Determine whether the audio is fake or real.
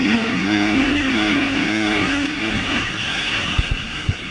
fake